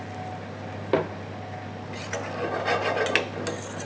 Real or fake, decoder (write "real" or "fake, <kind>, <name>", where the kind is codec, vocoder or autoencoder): real